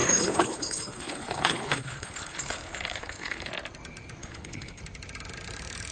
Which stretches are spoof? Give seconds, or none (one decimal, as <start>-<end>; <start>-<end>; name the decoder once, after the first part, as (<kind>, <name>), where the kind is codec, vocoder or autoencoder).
0.0-3.5 (codec, HILCodec); 4.2-4.8